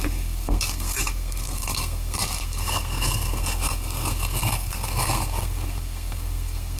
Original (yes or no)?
no